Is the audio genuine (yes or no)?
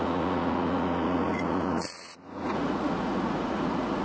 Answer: no